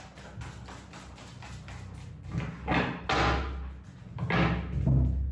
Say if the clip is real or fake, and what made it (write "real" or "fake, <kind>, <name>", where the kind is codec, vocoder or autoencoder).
real